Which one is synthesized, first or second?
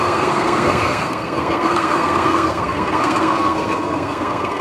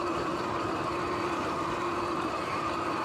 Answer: first